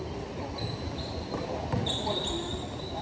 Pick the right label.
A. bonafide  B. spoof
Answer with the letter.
A